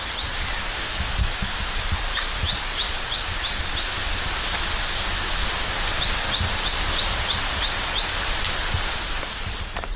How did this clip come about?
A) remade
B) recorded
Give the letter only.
B